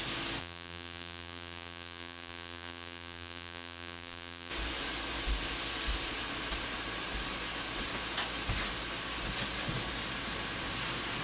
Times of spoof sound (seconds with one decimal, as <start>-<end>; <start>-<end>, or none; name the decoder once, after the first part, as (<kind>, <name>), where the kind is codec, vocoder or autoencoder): 0.4-4.5 (vocoder, BigVGAN v2)